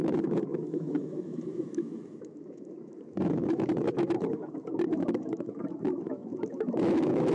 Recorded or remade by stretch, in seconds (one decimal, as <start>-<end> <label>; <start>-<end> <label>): 0.0-7.3 remade